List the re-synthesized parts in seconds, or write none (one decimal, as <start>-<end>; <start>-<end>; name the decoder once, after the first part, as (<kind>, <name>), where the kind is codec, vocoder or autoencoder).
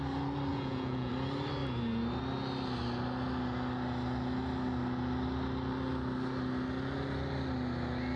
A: 0.5-1.1 (vocoder, Vocos)